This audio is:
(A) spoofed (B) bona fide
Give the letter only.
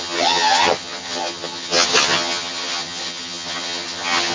A